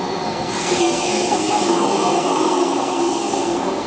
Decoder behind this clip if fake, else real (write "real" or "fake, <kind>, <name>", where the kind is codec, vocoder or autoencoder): fake, codec, SNAC